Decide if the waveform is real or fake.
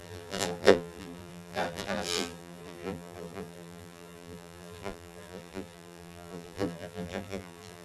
fake